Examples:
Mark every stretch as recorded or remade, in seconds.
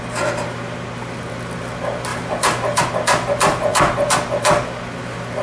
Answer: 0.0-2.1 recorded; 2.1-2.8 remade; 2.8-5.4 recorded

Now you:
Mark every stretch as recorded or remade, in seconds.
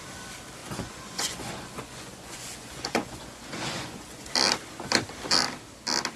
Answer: 0.0-0.6 recorded; 0.6-4.3 remade; 4.3-6.2 recorded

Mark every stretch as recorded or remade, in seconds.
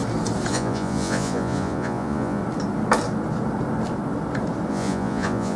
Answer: 0.0-0.5 recorded; 0.5-2.4 remade; 2.4-4.7 recorded; 4.7-5.6 remade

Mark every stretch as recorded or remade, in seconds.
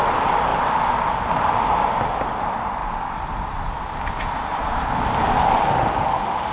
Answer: 0.0-5.6 recorded; 5.6-6.5 remade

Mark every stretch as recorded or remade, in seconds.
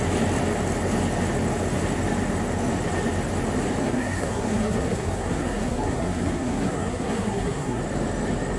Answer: 0.0-3.8 recorded; 3.8-7.8 remade; 7.8-8.6 recorded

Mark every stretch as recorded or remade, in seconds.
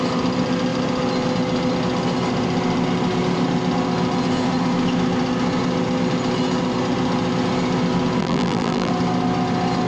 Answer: 0.0-8.2 recorded; 8.2-8.9 remade; 8.9-9.9 recorded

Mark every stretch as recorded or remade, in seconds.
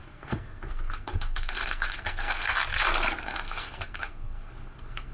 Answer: 0.0-2.6 remade; 2.6-3.2 recorded; 3.2-5.1 remade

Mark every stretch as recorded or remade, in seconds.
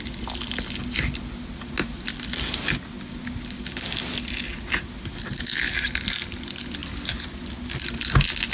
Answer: 0.0-8.5 recorded